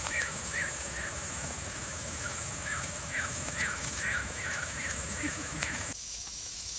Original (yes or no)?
no